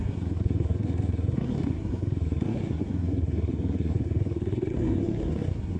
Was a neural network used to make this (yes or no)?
yes